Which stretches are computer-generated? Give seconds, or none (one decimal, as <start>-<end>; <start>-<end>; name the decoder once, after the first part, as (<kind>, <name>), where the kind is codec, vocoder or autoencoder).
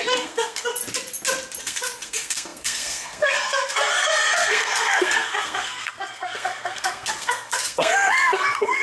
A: 0.0-0.7 (codec, SNAC); 1.6-8.8